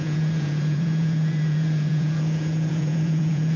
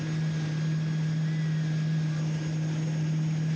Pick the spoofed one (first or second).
first